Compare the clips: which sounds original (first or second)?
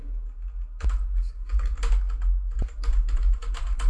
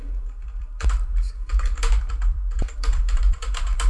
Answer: first